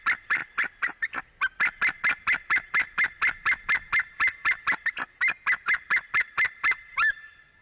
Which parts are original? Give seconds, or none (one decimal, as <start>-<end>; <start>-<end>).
0.0-7.6